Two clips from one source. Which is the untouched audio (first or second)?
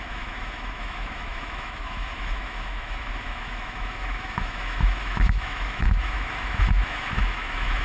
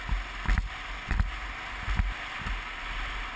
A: second